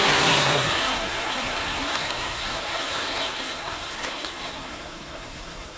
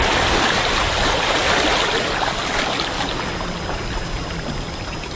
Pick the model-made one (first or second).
first